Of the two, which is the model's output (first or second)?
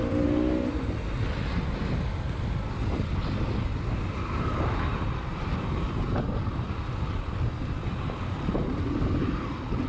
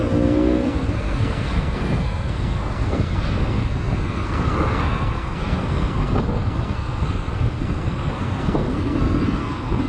second